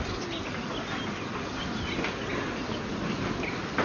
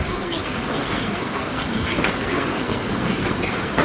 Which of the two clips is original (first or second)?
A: first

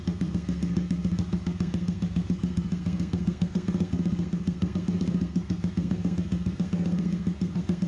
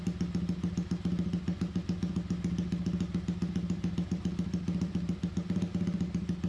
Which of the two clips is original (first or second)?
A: second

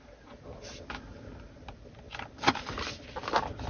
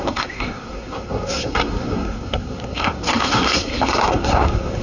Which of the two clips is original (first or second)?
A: first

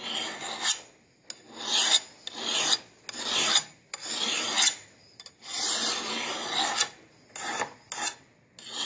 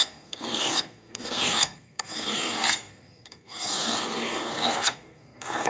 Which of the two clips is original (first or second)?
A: first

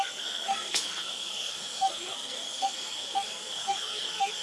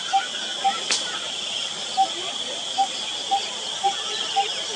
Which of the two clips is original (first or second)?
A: second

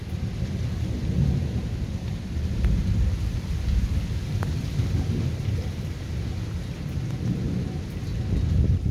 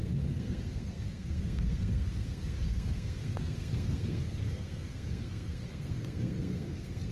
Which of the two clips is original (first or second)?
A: first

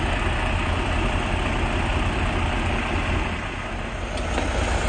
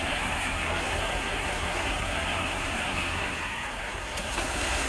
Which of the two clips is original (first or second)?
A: first